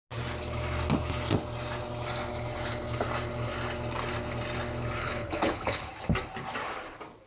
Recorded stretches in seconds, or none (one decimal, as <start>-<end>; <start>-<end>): 0.0-5.0; 5.9-7.3